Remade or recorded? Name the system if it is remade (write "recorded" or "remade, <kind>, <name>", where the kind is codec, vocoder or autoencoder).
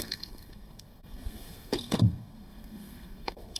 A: remade, codec, SNAC